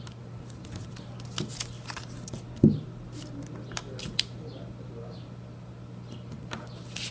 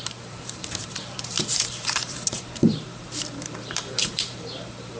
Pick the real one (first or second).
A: first